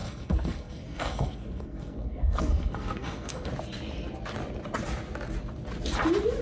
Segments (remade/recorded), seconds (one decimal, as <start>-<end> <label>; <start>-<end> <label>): 0.0-3.5 remade; 3.5-6.4 recorded